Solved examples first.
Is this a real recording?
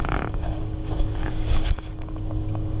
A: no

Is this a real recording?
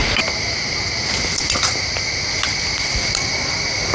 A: yes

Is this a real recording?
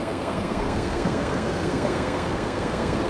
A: no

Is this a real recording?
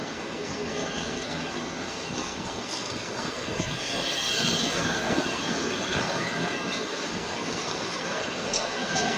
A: no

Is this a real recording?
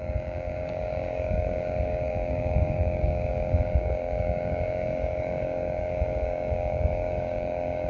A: no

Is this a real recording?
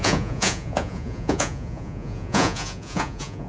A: no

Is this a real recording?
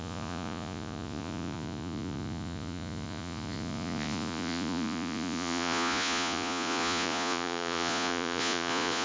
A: no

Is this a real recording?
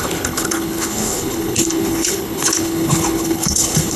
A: no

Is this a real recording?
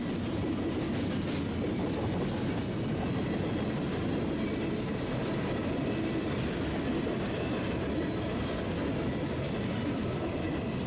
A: yes